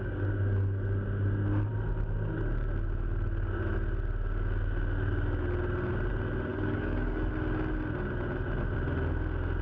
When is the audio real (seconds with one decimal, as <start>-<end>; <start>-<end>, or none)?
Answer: 0.0-6.5; 7.3-9.6